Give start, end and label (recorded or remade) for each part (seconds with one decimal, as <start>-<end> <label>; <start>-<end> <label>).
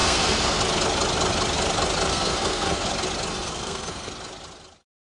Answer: 0.0-0.6 remade; 0.6-2.1 recorded; 2.1-2.9 remade; 2.9-3.3 recorded; 3.3-4.1 remade; 4.1-5.1 recorded